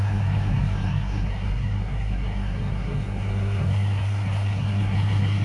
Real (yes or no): no